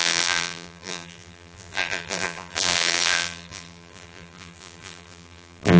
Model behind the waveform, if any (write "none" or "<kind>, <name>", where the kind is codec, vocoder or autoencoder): vocoder, BigVGAN v2